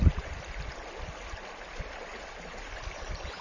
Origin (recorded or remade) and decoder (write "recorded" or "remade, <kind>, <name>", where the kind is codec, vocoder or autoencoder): recorded